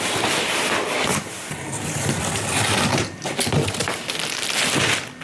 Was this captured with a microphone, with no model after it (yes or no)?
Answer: no